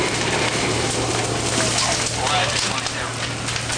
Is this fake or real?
real